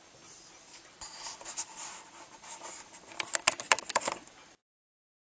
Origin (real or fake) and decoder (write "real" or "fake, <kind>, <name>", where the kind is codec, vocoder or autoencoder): real